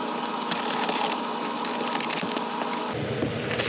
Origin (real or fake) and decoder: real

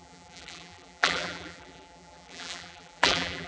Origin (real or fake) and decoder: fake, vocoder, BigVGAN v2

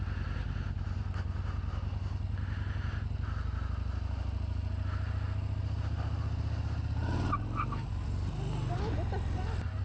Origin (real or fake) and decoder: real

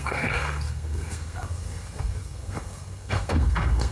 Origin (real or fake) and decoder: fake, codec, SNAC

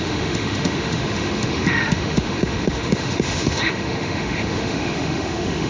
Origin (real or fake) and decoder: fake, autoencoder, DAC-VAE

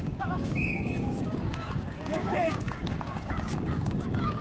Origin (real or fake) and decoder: fake, codec, DAC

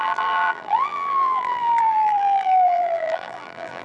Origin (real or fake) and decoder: fake, vocoder, BigVGAN v2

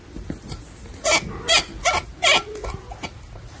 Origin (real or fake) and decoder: real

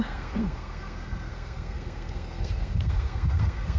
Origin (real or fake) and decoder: fake, codec, SNAC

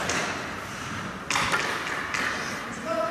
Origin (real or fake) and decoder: real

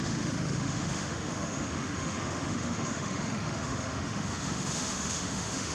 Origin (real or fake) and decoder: fake, autoencoder, DAC-VAE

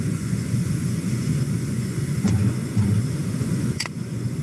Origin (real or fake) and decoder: fake, vocoder, Vocos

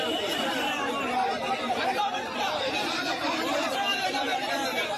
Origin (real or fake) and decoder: fake, vocoder, BigVGAN v2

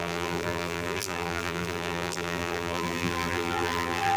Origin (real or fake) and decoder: fake, vocoder, BigVGAN v2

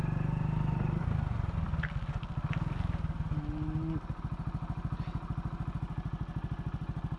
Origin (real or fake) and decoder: real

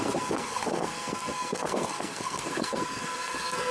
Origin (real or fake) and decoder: fake, codec, SNAC